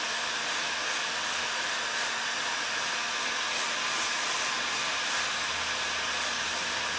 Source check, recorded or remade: recorded